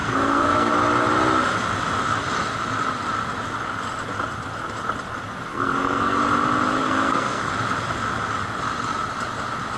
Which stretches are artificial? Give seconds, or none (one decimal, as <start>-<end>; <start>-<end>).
0.0-0.7; 5.5-6.2; 6.8-7.5